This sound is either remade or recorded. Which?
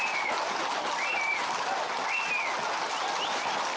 recorded